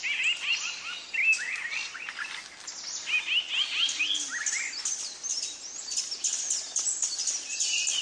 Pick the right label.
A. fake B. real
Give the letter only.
B